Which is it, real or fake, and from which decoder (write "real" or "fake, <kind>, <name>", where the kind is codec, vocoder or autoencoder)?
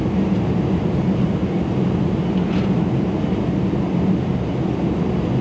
real